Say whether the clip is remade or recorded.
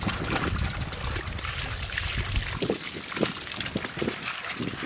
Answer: recorded